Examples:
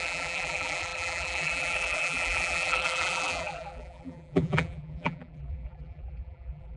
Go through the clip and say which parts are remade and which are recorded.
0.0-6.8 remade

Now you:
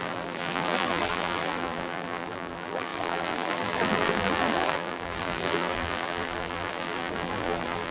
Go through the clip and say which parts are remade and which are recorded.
0.0-7.9 remade

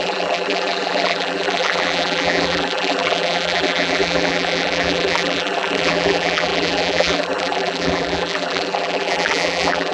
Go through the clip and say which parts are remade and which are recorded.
0.0-9.9 remade